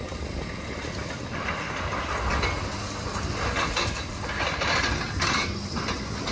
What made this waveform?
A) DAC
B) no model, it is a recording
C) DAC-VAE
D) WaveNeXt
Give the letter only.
B